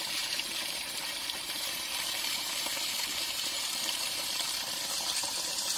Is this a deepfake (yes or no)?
yes